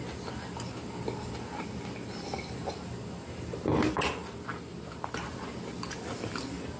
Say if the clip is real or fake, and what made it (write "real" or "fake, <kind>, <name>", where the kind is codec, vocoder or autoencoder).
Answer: real